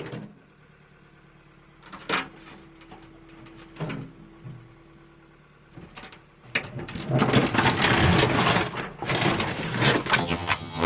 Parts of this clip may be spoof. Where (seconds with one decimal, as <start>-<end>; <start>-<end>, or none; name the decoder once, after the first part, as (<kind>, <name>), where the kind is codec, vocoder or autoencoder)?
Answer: 10.2-10.9 (vocoder, HiFi-GAN)